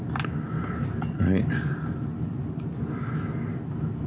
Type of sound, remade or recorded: recorded